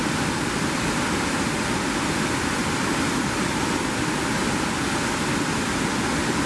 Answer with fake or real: real